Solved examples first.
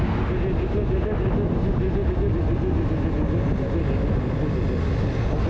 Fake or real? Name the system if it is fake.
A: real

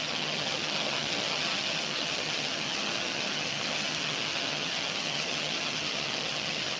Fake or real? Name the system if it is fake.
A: fake, vocoder, HiFi-GAN